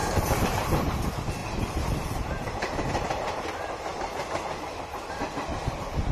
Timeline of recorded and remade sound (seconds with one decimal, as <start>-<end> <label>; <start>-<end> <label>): 0.0-6.1 recorded